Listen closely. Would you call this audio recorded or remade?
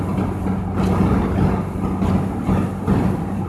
recorded